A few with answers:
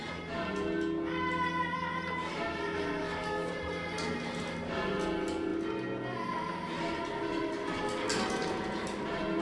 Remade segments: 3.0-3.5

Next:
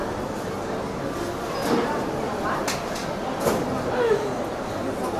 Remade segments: none

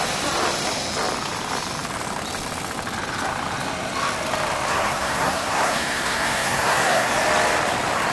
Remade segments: 4.7-7.1

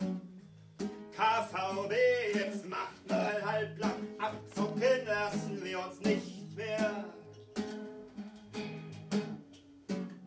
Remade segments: 2.3-3.3; 7.7-9.9

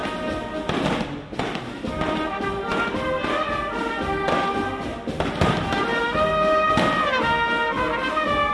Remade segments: none

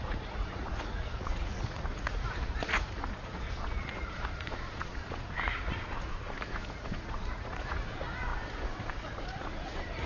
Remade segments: 0.0-10.1

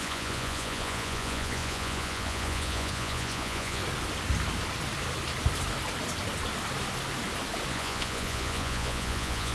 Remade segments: 0.0-3.8; 7.7-9.5